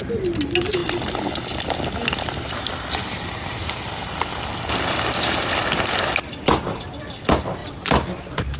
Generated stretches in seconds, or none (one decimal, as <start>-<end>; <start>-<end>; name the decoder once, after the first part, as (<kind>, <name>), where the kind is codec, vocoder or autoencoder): none

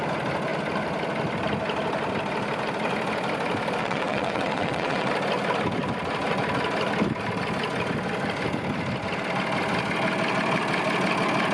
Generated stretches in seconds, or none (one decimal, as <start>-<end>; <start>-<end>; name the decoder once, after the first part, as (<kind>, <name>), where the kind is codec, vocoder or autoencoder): 3.8-5.1 (vocoder, WaveNeXt)

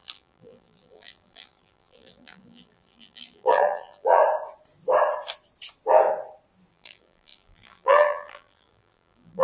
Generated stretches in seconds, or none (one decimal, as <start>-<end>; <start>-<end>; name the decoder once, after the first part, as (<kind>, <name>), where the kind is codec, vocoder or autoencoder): 0.0-4.2 (vocoder, BigVGAN v2); 6.7-9.4

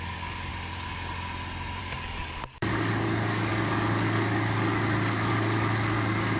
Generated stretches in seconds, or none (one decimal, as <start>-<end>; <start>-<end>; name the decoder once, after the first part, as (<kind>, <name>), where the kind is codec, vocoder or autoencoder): 0.0-0.5 (codec, DAC); 1.8-6.4